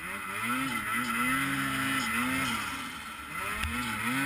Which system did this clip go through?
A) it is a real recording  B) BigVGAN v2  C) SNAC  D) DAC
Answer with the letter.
A